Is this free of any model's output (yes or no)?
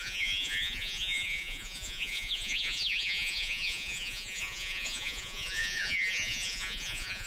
no